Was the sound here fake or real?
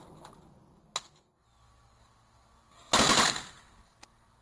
real